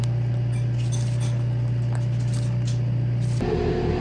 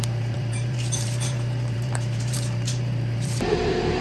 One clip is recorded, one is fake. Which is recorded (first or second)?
first